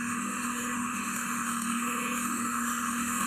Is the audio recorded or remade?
remade